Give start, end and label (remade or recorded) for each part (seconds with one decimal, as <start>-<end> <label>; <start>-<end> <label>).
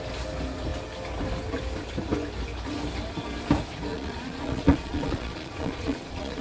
0.0-3.9 recorded; 3.9-6.4 remade